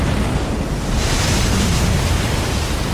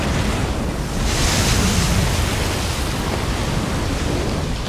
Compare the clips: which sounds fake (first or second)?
first